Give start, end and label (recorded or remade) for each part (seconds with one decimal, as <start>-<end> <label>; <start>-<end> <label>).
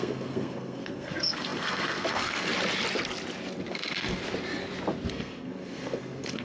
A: 0.0-2.5 remade; 2.5-3.7 recorded; 3.7-4.2 remade; 4.2-5.1 recorded; 5.1-6.4 remade